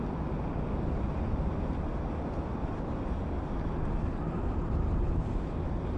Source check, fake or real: real